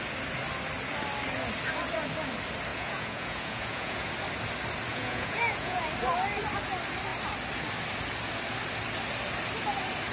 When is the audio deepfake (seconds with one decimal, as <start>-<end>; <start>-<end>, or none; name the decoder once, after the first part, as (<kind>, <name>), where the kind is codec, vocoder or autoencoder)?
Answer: 2.7-4.1 (vocoder, Vocos); 4.9-5.8